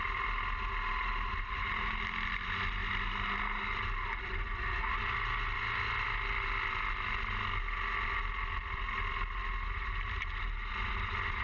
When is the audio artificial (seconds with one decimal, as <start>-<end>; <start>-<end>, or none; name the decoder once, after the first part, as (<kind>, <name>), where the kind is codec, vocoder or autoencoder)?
none